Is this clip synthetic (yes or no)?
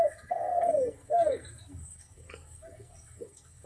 yes